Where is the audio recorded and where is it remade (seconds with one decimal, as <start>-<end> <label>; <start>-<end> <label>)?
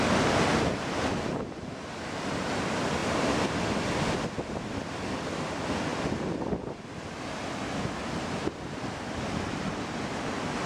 0.0-10.7 recorded